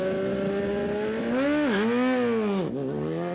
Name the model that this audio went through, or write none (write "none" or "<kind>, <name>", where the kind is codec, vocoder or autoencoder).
none